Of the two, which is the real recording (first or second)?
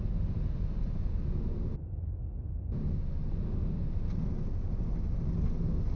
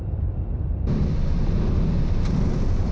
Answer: first